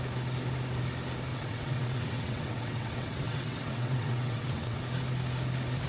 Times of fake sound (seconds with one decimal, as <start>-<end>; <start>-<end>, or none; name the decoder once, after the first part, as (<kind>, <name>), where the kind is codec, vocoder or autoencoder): 1.3-4.8 (vocoder, WaveNeXt)